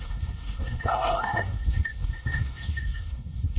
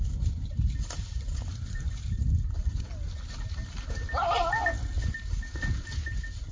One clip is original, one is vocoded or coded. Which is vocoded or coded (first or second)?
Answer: first